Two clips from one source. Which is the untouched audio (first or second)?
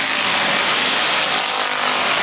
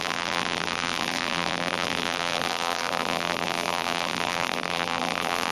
first